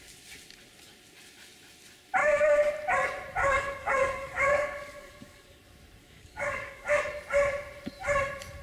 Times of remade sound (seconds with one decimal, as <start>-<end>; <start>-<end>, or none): 2.2-2.7; 3.4-5.6; 6.0-7.0